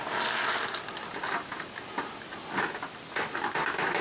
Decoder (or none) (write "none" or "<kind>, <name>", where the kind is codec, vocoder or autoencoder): none